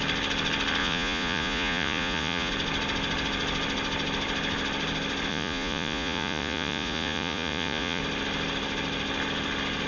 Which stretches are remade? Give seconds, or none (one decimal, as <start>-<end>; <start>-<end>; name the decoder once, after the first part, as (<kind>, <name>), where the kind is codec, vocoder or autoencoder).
0.8-2.5 (vocoder, Vocos); 5.3-8.0